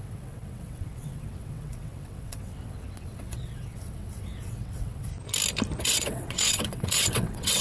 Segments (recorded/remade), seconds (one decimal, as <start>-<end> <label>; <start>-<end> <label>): 0.0-5.1 remade; 5.1-5.8 recorded; 5.8-7.6 remade

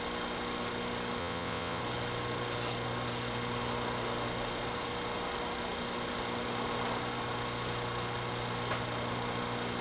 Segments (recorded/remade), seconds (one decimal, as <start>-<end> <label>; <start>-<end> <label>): 0.0-1.2 recorded; 1.2-1.8 remade; 1.8-9.8 recorded

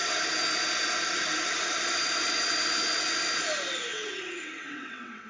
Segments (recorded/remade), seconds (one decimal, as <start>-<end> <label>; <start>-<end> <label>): 0.0-3.9 recorded; 3.9-5.3 remade

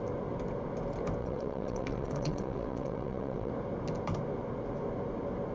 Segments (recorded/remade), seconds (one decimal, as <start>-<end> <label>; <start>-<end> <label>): 0.0-1.2 recorded; 1.2-3.5 remade; 3.5-5.5 recorded

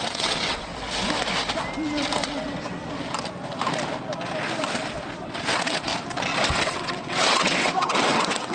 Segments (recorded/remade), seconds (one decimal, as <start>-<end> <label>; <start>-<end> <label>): 0.0-0.7 remade; 0.7-5.5 recorded; 5.5-5.9 remade; 5.9-6.5 recorded; 6.5-8.5 remade

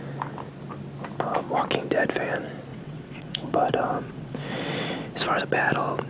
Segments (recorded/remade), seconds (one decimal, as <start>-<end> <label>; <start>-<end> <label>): 0.0-2.7 recorded; 2.7-5.4 remade; 5.4-6.1 recorded